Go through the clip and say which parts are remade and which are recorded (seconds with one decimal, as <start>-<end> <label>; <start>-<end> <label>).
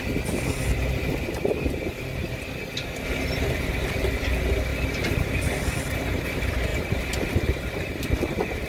0.0-8.7 recorded